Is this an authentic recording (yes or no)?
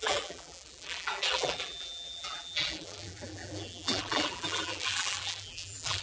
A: no